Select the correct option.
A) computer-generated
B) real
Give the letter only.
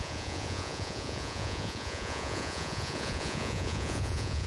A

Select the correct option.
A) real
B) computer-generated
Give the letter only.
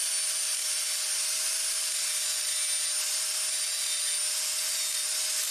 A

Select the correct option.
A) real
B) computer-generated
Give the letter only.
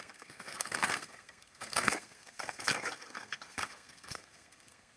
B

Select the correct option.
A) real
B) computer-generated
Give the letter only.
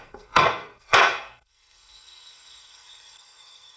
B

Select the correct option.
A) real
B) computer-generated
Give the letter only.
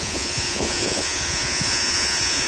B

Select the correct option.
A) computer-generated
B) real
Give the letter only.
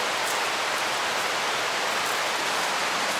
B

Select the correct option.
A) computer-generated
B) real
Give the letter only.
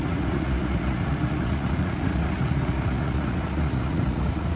A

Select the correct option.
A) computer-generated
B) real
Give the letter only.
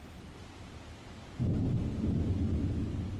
B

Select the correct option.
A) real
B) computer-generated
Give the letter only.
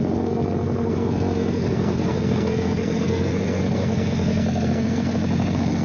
B